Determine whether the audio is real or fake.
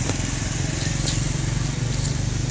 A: real